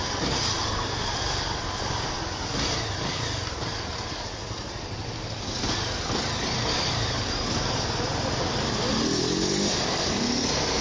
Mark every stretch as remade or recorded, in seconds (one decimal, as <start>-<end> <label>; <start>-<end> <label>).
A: 0.0-10.8 recorded